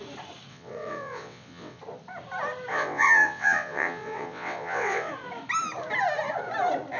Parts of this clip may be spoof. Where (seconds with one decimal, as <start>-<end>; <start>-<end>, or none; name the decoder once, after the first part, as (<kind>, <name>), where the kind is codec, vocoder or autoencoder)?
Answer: 0.5-1.8 (vocoder, WaveNeXt); 2.7-5.1